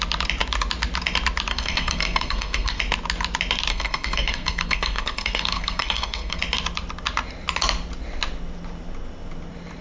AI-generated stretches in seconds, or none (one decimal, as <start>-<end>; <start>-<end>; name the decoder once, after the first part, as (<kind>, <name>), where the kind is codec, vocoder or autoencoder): 1.5-2.8 (codec, SNAC); 3.7-6.4